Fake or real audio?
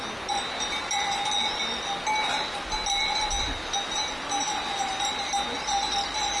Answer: real